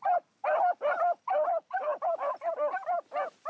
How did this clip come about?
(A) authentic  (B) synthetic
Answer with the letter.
A